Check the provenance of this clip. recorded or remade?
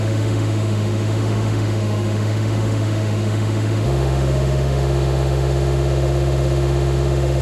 remade